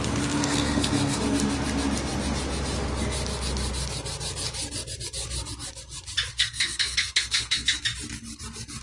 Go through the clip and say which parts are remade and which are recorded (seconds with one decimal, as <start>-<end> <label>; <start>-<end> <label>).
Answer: 0.0-0.4 recorded; 0.4-1.2 remade; 1.2-6.3 recorded; 6.3-7.8 remade; 7.8-8.8 recorded